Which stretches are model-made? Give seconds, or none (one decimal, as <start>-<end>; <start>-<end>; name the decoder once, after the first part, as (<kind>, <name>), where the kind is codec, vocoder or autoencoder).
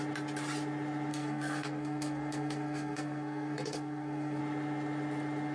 1.1-4.4 (codec, SNAC)